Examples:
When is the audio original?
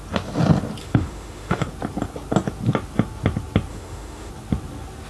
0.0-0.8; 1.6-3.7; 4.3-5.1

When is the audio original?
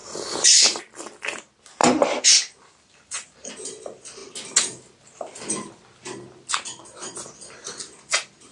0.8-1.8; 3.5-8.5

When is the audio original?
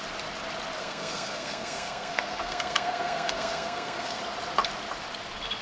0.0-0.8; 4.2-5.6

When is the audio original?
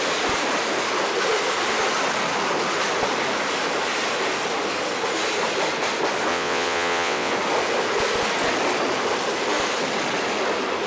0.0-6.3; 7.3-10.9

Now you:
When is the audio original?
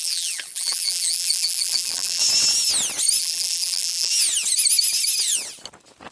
2.2-3.2; 4.1-6.1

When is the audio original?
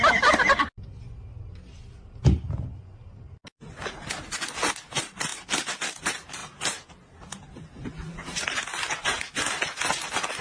0.0-10.4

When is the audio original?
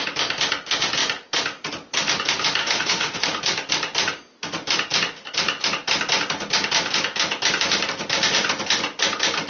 0.0-2.6; 3.2-9.5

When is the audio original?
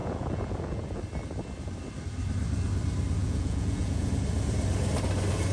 1.0-3.2; 4.1-5.5